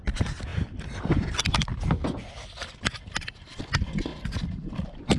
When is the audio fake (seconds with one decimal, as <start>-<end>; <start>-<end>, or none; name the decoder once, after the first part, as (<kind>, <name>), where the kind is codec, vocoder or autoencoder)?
none